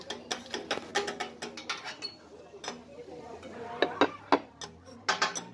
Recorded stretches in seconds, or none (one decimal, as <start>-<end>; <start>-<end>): 0.0-5.5